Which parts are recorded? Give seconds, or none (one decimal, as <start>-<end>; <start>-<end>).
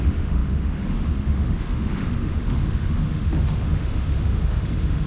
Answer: none